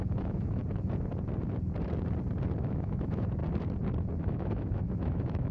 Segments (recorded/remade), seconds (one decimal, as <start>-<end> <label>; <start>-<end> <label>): 0.0-0.6 remade; 0.6-2.6 recorded; 2.6-3.4 remade; 3.4-4.2 recorded; 4.2-5.5 remade